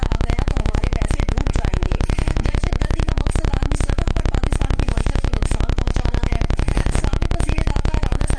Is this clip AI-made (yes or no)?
yes